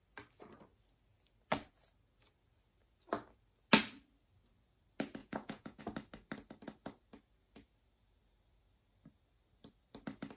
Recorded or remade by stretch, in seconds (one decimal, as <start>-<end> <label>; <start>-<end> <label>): 0.0-5.2 recorded; 5.2-5.8 remade; 5.8-10.4 recorded